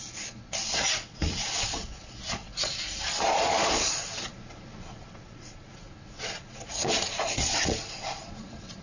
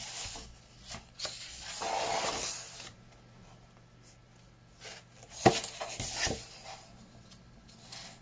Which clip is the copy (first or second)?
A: first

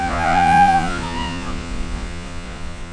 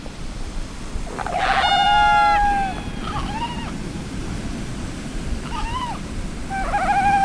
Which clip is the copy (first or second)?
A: first